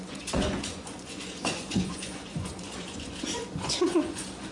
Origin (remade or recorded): remade